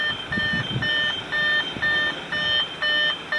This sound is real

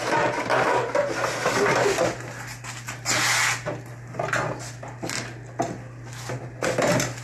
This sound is real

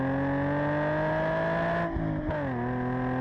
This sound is real